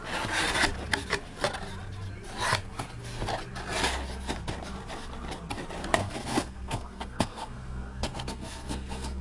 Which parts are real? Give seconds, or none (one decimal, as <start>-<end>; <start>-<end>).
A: 0.0-6.0